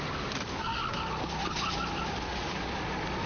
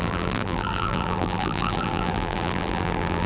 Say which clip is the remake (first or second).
second